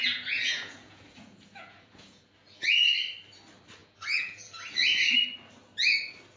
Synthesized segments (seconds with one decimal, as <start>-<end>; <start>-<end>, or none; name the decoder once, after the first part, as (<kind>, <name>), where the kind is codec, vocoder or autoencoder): 0.0-2.3 (vocoder, Vocos); 3.8-4.5